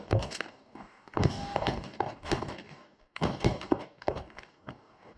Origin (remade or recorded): remade